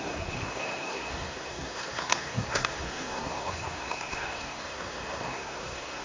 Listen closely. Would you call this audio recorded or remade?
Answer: remade